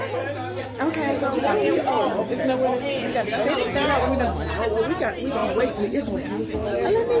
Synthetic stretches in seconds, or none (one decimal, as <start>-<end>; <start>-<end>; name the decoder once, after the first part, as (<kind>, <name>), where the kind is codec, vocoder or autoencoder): 5.4-6.0 (vocoder, BigVGAN v2)

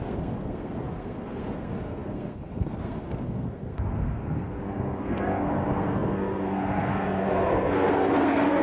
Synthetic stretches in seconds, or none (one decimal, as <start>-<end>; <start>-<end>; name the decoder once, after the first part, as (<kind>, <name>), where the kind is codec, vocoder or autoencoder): 0.0-8.6 (codec, SNAC)

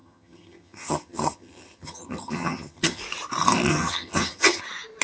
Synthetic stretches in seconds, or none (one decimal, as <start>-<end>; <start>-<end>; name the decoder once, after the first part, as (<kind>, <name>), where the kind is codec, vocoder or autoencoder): 0.0-3.0 (vocoder, HiFi-GAN); 3.7-4.6

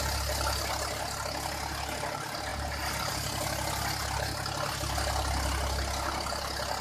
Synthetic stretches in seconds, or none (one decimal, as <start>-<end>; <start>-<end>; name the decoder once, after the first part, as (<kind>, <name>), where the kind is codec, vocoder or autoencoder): none

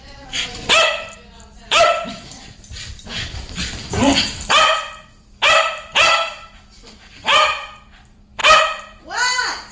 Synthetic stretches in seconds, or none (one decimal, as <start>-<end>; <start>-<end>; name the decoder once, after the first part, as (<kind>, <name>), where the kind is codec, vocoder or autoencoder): 0.0-8.4 (vocoder, BigVGAN v2); 9.0-9.7